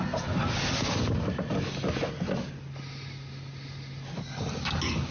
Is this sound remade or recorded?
recorded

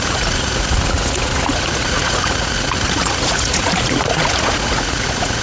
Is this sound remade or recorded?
remade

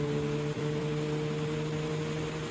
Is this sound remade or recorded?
recorded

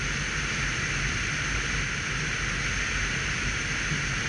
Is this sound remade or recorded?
recorded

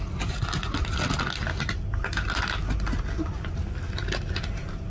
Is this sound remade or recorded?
recorded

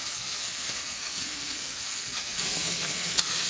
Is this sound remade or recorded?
remade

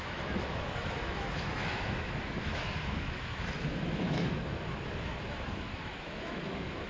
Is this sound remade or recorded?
remade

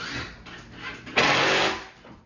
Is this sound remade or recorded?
recorded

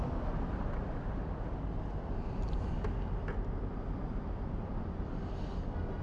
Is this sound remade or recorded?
recorded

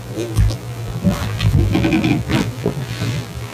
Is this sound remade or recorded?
remade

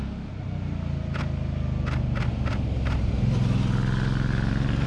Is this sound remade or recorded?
recorded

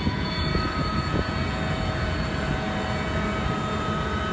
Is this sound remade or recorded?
remade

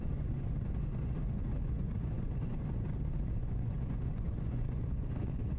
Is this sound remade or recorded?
remade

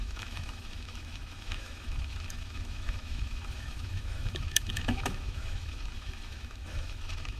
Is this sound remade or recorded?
remade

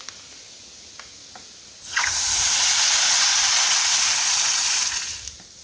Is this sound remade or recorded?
recorded